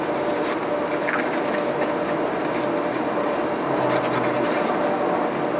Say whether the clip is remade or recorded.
recorded